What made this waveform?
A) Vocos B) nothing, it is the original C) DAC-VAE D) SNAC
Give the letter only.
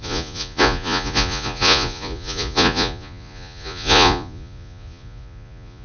A